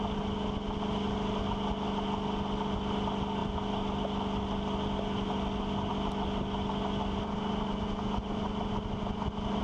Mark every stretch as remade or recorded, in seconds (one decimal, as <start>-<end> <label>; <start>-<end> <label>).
0.0-9.6 recorded